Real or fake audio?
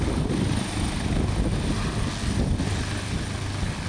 real